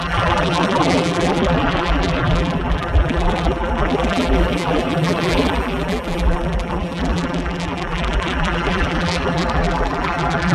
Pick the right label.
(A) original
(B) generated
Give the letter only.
B